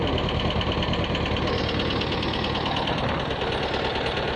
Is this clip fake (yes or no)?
no